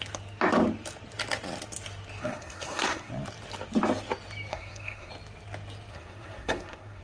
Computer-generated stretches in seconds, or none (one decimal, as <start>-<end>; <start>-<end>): 2.2-3.1; 4.5-5.1; 5.9-7.0